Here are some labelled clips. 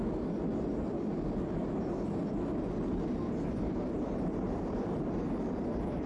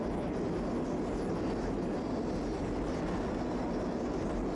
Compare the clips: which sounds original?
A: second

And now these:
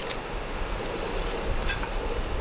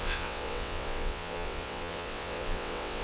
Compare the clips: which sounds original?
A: first